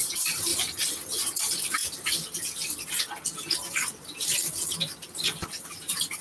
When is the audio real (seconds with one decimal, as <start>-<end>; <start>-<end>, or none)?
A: 0.5-1.4; 1.8-5.5

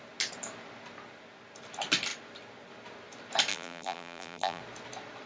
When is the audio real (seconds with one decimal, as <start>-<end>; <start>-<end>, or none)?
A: 0.0-3.5; 4.6-5.3

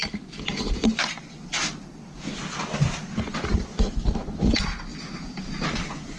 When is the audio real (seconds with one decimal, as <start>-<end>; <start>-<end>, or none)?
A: 0.0-6.2

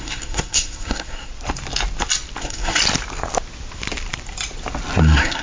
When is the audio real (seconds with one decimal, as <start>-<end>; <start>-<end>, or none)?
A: 1.3-2.4; 2.8-5.0

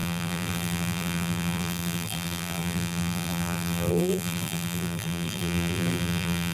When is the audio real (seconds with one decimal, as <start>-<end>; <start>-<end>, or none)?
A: none

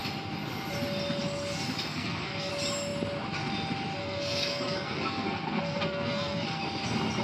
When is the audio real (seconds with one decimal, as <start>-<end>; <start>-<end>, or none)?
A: 0.0-1.9; 2.5-4.0; 6.6-7.2

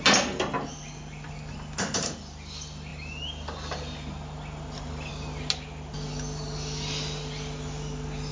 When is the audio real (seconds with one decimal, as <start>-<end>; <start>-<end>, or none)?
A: 0.0-8.3

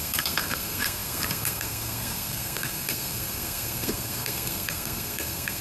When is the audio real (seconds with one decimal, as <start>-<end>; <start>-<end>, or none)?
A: none